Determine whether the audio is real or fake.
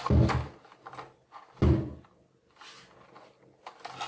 real